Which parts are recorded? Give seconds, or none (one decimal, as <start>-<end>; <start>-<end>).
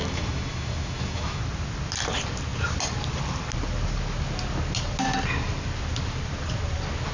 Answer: 1.4-7.1